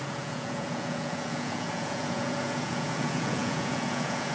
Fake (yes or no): yes